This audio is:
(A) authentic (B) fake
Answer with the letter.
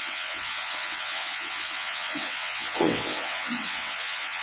B